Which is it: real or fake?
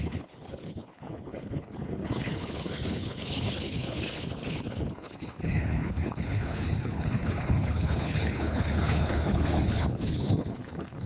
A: fake